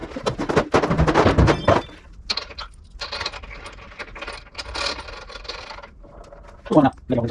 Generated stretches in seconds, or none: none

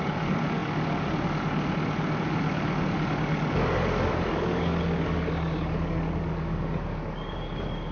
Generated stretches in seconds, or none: 0.0-7.9 (codec, DAC)